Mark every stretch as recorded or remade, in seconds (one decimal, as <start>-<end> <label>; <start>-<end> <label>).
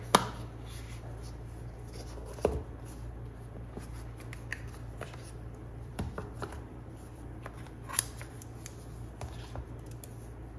0.0-4.5 recorded; 4.5-8.4 remade; 8.4-10.6 recorded